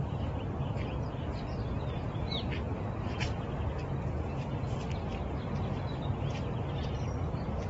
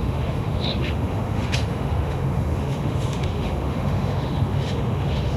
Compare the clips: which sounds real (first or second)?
first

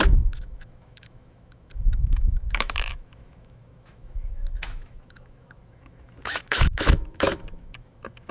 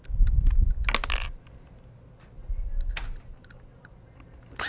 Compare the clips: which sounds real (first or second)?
second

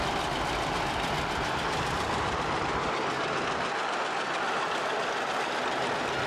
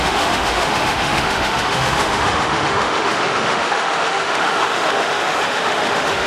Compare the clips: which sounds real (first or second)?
first